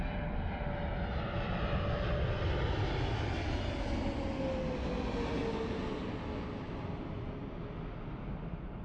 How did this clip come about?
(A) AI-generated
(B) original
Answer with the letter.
B